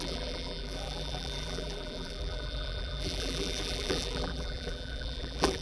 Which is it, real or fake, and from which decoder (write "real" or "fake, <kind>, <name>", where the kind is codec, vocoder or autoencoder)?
fake, vocoder, BigVGAN v2